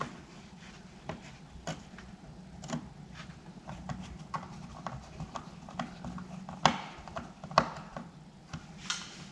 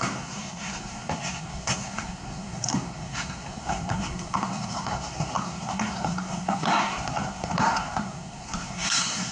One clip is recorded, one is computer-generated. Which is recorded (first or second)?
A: first